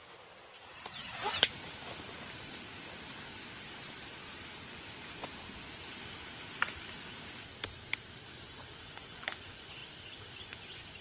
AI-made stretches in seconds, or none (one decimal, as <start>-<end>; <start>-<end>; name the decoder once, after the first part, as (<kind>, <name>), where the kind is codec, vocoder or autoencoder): 4.7-5.3 (vocoder, Vocos); 8.3-9.8; 10.4-11.0